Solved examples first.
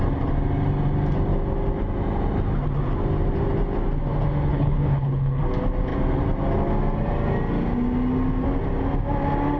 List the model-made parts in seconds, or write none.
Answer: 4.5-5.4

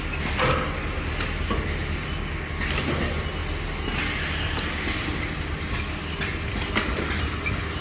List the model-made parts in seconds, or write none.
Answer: none

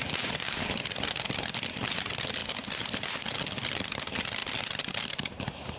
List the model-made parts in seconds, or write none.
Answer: 0.0-2.4; 3.7-4.4

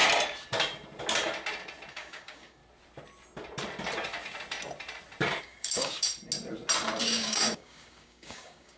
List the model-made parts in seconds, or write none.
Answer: 1.9-2.6; 5.4-6.1; 7.0-8.8

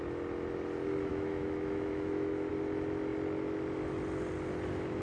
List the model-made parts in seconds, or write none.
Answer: 1.1-2.5

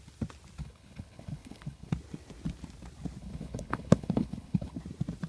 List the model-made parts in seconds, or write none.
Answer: 0.6-1.9; 3.2-4.8